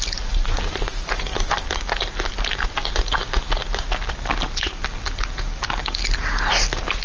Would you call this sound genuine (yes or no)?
yes